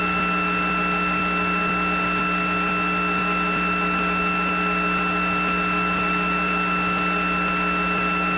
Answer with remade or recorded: recorded